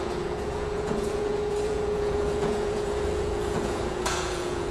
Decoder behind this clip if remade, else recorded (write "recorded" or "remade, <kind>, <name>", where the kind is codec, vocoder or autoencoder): remade, vocoder, Vocos